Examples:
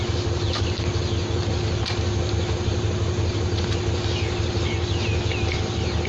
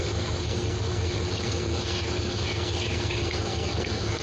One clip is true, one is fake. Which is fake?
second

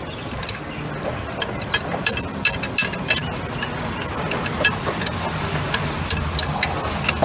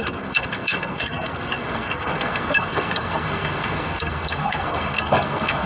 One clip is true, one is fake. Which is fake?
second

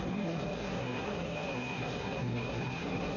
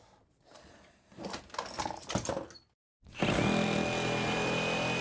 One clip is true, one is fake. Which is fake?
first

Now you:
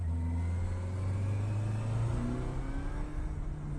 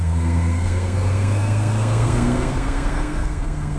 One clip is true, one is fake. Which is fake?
second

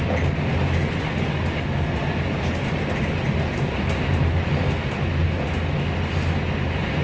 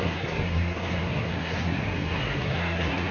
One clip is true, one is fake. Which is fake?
second